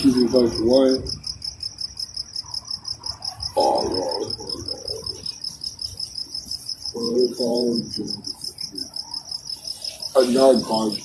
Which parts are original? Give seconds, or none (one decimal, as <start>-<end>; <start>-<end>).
0.0-6.0; 8.1-11.0